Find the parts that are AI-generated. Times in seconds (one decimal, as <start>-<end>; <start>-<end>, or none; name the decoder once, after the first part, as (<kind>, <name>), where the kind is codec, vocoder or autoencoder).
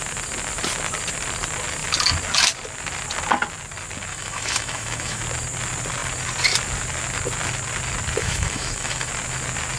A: 4.1-5.2 (autoencoder, DAC-VAE); 8.2-9.1